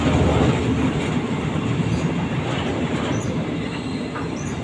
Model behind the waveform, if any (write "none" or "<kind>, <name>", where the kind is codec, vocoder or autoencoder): none